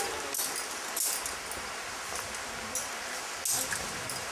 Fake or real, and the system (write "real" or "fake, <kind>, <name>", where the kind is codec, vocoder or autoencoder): real